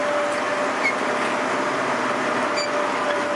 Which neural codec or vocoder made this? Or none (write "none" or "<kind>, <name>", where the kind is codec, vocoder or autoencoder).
none